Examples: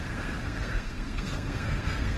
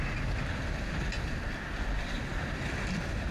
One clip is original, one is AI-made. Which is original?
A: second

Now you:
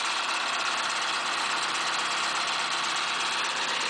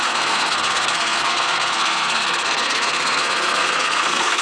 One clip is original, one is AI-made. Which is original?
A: first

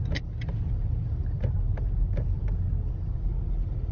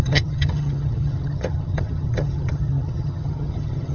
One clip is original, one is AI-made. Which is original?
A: first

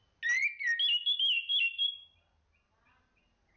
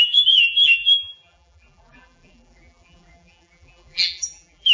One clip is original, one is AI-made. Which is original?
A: first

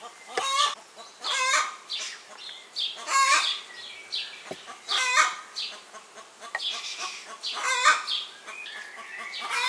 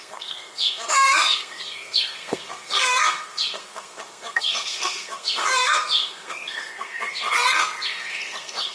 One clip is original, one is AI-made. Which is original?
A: first